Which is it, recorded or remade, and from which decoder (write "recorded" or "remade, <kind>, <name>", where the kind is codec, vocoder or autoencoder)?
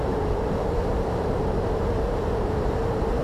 remade, vocoder, BigVGAN v2